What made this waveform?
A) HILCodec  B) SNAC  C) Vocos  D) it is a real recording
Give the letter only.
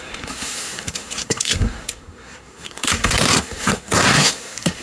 B